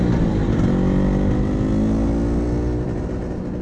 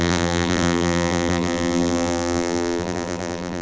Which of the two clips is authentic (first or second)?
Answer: first